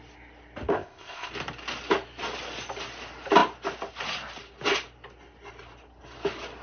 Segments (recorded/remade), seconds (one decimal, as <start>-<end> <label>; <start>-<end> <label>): 0.0-0.7 recorded; 0.7-1.3 remade; 1.3-6.6 recorded